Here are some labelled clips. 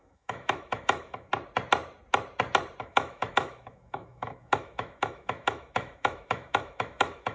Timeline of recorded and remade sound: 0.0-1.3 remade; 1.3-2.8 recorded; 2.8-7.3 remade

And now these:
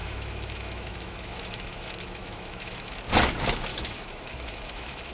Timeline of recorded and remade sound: 0.0-3.0 remade; 3.0-3.7 recorded; 3.7-5.1 remade

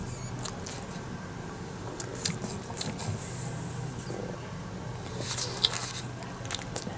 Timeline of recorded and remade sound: 0.0-7.0 recorded